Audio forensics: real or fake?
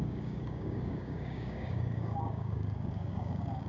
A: fake